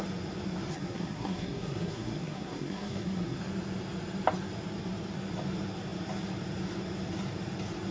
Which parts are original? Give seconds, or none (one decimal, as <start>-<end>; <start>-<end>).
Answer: 0.0-0.7; 3.4-7.9